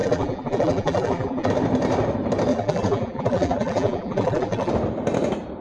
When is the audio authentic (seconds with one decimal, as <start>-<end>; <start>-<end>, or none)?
1.5-2.5; 4.7-5.6